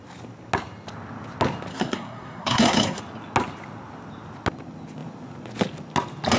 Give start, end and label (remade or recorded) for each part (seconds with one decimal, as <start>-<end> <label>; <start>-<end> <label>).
0.0-1.7 recorded; 1.7-3.0 remade; 3.0-6.4 recorded